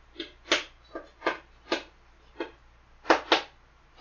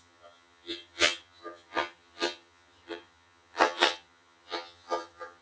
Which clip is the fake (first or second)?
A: second